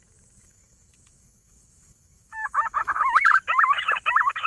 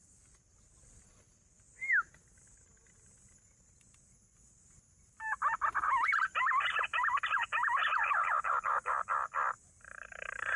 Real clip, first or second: second